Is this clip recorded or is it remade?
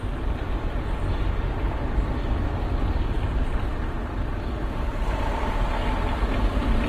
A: recorded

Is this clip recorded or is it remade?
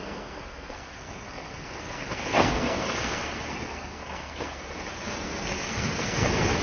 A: remade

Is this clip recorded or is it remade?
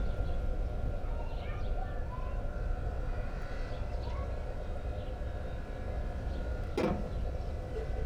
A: recorded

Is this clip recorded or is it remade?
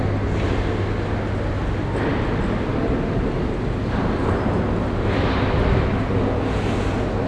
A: recorded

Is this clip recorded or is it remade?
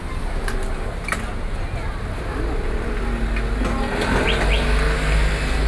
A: recorded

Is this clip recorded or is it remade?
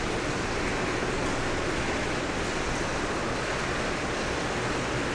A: recorded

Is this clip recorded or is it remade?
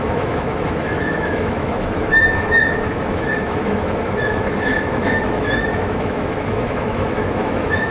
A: remade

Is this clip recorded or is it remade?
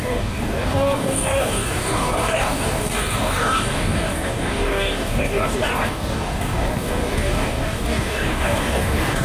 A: remade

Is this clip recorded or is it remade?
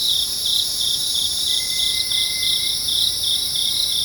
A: remade